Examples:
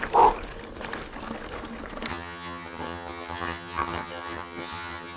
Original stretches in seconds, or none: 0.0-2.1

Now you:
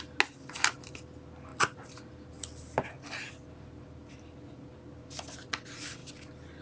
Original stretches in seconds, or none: 0.0-6.6

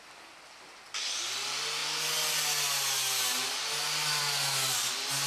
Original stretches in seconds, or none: 0.0-5.3

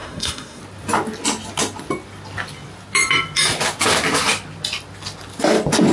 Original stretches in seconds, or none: 0.6-5.9

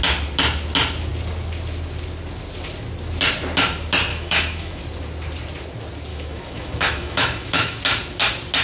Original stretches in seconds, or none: 0.0-4.1; 4.8-6.1; 7.8-8.6

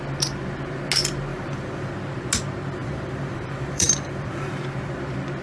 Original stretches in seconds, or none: 0.0-1.3; 1.9-2.8; 4.6-5.4